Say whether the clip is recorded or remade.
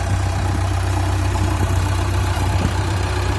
remade